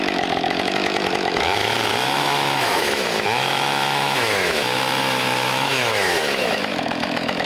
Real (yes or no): no